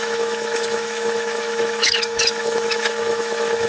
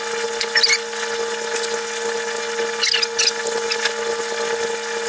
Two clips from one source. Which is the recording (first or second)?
second